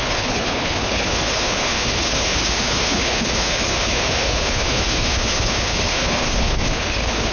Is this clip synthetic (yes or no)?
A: yes